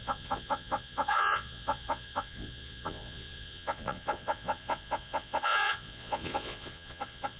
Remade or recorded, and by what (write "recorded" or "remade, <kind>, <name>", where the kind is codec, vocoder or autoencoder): remade, vocoder, Vocos